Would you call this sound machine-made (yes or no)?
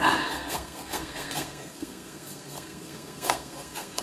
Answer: yes